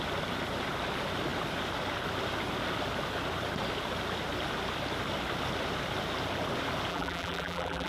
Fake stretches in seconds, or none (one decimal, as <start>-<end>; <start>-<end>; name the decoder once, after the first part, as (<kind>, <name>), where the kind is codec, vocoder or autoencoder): 6.9-7.9 (vocoder, BigVGAN v2)